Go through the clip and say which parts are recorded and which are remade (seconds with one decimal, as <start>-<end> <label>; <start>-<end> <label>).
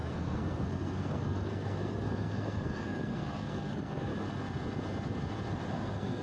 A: 0.0-4.1 remade; 4.1-5.7 recorded; 5.7-6.2 remade